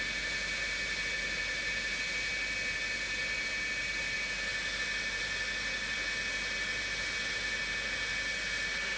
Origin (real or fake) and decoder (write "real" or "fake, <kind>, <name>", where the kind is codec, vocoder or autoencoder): real